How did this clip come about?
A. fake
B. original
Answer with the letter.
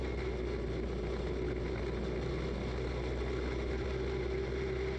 B